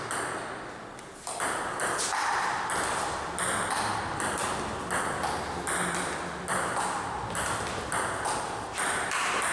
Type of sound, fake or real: real